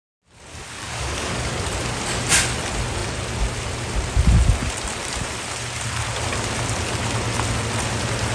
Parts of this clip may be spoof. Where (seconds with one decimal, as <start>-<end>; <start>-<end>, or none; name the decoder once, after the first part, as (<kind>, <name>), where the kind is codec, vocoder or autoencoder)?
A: 0.5-1.5 (codec, DAC)